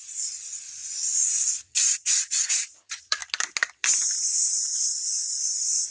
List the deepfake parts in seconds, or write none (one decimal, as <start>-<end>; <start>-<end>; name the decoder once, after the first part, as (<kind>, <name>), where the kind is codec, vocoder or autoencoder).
0.0-0.8 (vocoder, Vocos); 1.8-3.2; 4.6-5.9